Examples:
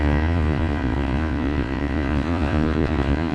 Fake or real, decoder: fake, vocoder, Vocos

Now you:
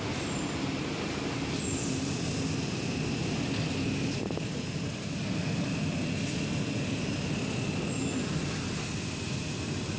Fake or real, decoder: real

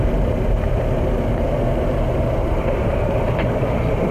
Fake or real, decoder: fake, vocoder, BigVGAN v2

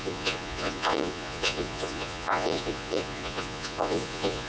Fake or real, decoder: fake, vocoder, Vocos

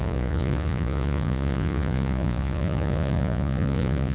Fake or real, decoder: fake, vocoder, Vocos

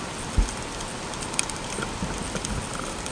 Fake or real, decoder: real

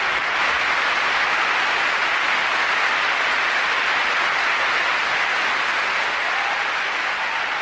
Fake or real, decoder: real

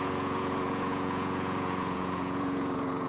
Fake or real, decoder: fake, vocoder, Vocos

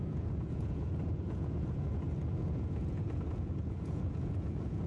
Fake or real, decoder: fake, vocoder, Vocos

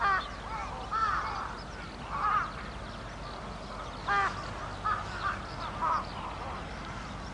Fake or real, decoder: real